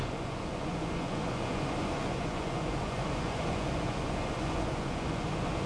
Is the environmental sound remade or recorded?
remade